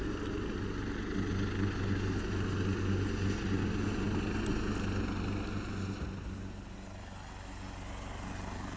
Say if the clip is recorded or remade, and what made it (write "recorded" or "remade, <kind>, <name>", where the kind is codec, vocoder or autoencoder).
recorded